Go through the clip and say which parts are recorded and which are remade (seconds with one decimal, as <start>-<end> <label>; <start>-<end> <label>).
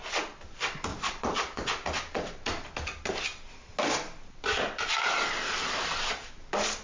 0.0-0.9 recorded; 0.9-1.7 remade; 1.7-6.8 recorded